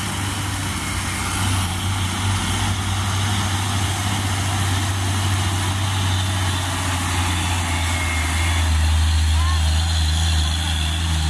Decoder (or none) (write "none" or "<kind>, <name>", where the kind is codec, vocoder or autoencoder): none